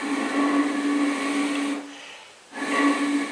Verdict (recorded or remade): recorded